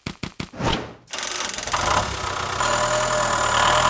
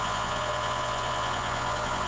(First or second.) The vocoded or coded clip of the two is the second